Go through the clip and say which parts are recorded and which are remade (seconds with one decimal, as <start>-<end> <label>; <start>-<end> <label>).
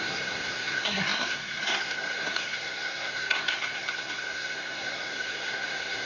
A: 0.0-6.1 remade